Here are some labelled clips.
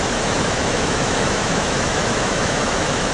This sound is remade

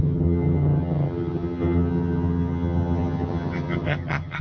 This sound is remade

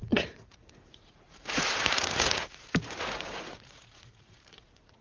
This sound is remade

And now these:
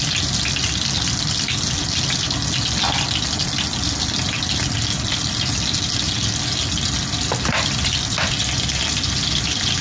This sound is recorded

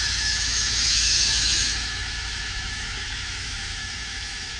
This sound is remade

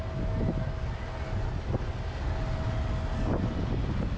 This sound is recorded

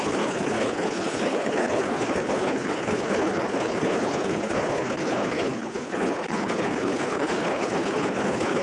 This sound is remade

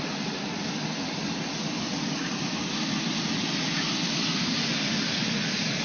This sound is recorded